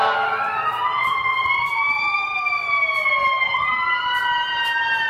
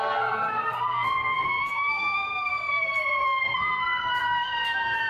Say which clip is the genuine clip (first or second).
first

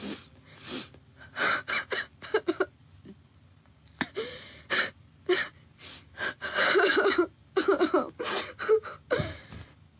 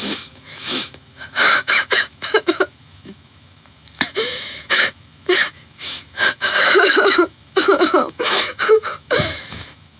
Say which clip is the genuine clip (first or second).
first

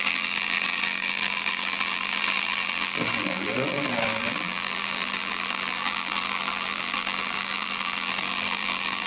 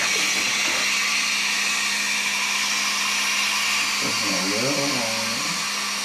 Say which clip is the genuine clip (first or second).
second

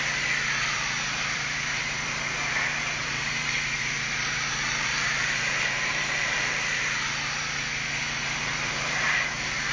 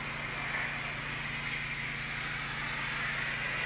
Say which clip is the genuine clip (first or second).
second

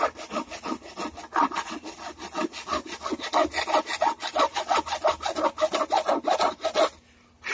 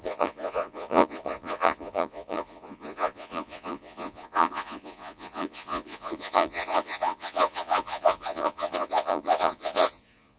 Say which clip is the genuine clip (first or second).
first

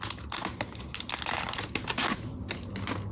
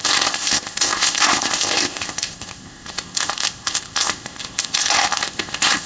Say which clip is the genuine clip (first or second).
first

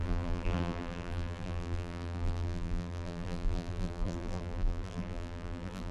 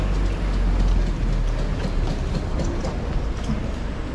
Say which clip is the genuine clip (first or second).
second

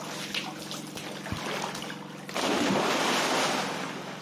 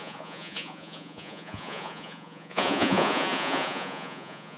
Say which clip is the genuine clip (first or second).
first